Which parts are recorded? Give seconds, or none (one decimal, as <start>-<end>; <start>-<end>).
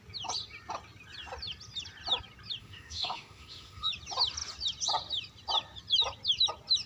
0.0-2.6; 3.9-6.9